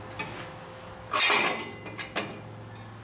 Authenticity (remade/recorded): recorded